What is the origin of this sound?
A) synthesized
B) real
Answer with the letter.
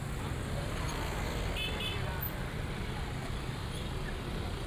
B